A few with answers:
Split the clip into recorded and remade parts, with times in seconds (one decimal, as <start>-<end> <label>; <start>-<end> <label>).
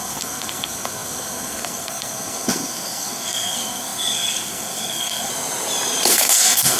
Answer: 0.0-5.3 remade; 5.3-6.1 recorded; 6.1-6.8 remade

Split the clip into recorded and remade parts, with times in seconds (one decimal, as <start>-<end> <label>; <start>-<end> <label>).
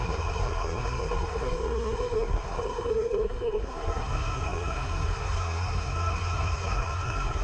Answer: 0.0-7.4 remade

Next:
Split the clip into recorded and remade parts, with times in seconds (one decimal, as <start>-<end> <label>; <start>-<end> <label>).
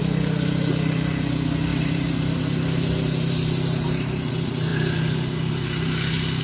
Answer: 0.0-1.7 recorded; 1.7-4.3 remade; 4.3-6.4 recorded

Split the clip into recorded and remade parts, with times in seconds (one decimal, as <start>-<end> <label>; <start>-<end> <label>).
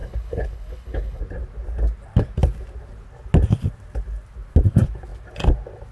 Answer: 0.0-1.2 remade; 1.2-5.9 recorded